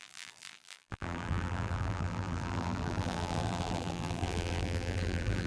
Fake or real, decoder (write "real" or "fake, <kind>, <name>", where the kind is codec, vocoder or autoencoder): fake, vocoder, BigVGAN v2